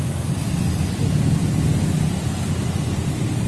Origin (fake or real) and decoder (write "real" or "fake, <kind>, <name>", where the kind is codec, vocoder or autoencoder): real